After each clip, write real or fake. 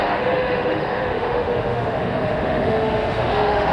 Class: fake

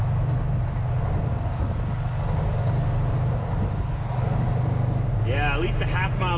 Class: real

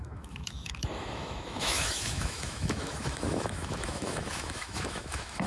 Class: fake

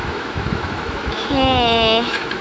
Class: fake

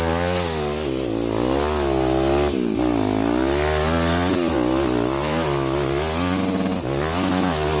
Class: real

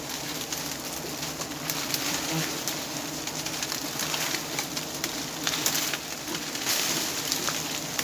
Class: real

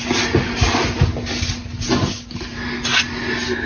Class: real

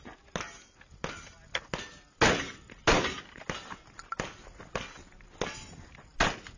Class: real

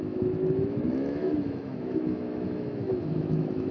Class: fake